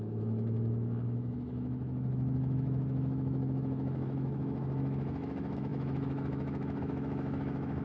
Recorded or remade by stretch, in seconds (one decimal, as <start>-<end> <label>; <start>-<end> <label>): 0.0-7.8 remade

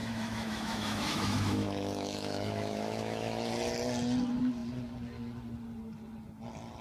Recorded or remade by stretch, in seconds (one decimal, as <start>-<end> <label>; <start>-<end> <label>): 0.0-3.5 remade; 3.5-6.8 recorded

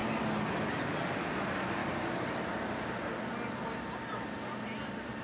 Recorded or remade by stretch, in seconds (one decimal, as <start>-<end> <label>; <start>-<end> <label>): 0.0-5.2 recorded

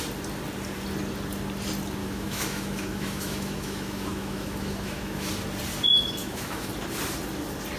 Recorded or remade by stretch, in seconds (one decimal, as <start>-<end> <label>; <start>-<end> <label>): 0.0-2.0 recorded; 2.0-5.3 remade; 5.3-6.2 recorded; 6.2-6.7 remade; 6.7-7.8 recorded

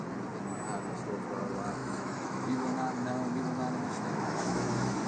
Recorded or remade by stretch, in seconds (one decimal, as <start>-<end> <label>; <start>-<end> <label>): 0.0-1.8 recorded; 1.8-5.1 remade